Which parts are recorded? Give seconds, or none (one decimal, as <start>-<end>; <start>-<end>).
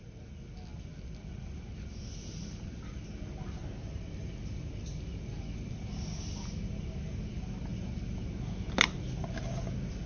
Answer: 0.0-10.1